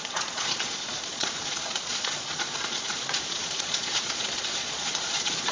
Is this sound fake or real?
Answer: fake